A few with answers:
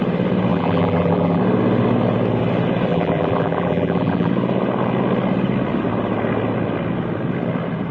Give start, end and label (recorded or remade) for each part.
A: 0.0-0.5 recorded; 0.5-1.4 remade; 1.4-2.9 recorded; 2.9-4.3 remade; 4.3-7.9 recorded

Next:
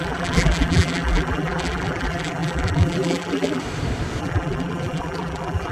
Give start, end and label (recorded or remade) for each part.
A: 0.0-3.6 remade; 3.6-4.2 recorded; 4.2-5.7 remade

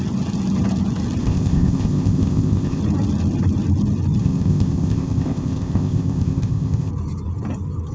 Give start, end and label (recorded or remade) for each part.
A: 0.0-1.2 recorded; 1.2-2.8 remade; 2.8-4.2 recorded; 4.2-6.9 remade; 6.9-7.9 recorded

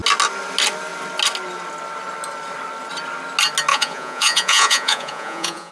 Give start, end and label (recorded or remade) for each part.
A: 0.0-3.7 recorded; 3.7-5.7 remade

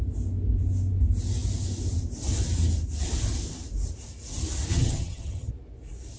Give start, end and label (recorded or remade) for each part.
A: 0.0-4.7 recorded; 4.7-5.5 remade; 5.5-6.2 recorded

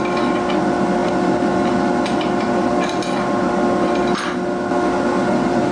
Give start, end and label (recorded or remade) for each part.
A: 0.0-5.7 recorded